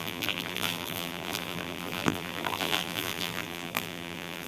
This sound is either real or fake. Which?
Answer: fake